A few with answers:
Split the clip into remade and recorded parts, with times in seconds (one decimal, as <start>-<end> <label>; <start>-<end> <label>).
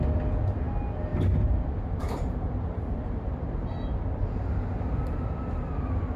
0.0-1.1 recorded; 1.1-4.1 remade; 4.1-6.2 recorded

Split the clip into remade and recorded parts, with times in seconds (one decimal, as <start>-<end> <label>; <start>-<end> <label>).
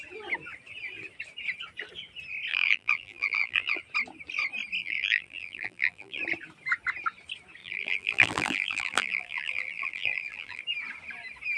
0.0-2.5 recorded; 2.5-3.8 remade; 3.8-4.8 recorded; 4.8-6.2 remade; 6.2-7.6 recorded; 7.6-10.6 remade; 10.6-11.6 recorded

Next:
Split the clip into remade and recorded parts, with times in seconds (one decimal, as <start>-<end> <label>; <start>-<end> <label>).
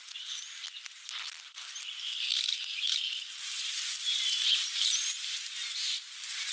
0.0-1.0 remade; 1.0-2.3 recorded; 2.3-6.5 remade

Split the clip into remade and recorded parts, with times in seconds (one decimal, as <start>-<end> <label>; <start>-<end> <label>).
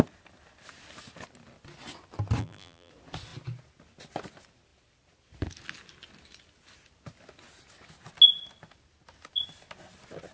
0.0-2.4 recorded; 2.4-2.9 remade; 2.9-10.3 recorded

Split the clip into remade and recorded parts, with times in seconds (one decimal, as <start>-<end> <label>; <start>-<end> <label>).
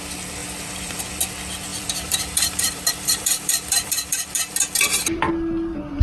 0.0-0.4 recorded; 0.4-1.0 remade; 1.0-1.7 recorded; 1.7-5.3 remade; 5.3-6.0 recorded